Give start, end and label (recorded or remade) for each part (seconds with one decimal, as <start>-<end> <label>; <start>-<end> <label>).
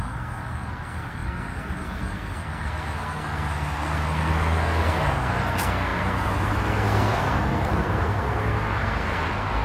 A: 0.0-9.6 remade